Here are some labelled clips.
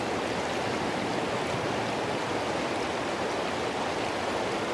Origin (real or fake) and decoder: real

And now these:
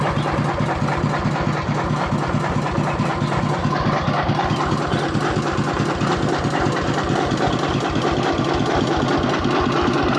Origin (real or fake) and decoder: real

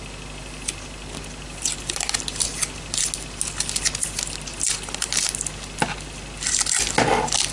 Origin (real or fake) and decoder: real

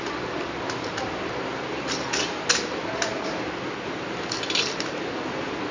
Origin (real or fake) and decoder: real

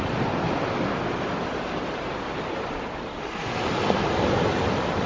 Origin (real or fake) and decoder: real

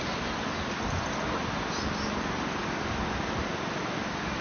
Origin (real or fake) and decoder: real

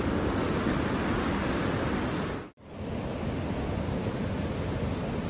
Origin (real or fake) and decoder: real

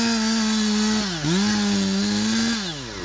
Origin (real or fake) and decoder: real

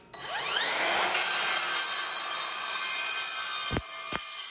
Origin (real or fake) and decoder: real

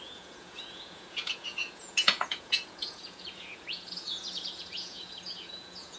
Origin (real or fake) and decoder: fake, vocoder, Vocos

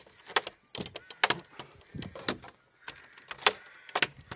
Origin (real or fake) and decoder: real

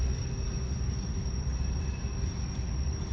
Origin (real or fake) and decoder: real